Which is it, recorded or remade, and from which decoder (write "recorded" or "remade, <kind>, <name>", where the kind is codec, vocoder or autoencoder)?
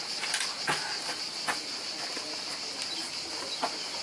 recorded